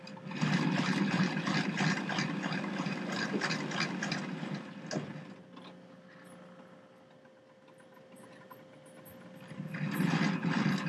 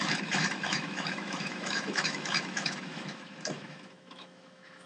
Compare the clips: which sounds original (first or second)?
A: first